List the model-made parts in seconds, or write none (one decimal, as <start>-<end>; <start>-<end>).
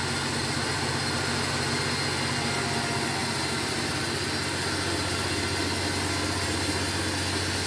0.4-0.9; 3.2-3.9